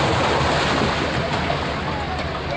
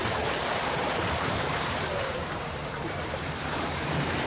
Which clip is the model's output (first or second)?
second